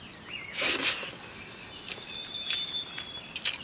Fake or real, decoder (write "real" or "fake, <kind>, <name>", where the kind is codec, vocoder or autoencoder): real